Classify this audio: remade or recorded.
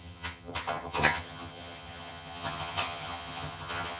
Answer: remade